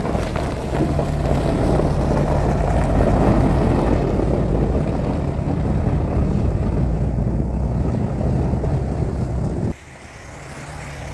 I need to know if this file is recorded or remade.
recorded